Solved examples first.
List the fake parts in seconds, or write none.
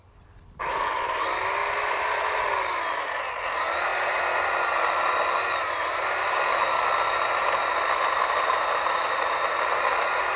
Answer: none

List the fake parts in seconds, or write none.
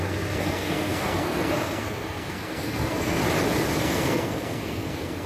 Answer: 0.0-3.2; 3.8-5.3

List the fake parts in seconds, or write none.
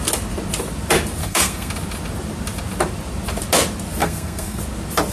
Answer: 1.2-1.7; 4.0-4.6